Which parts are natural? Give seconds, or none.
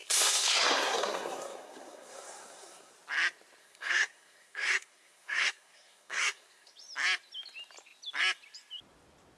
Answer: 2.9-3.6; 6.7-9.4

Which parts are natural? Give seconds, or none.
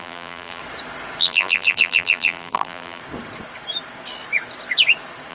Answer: 0.6-1.2; 3.0-5.3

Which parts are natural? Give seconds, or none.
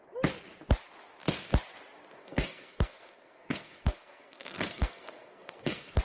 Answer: 0.0-2.2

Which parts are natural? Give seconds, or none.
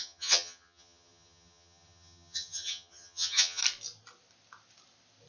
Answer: 3.6-5.3